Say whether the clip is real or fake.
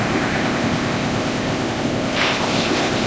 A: fake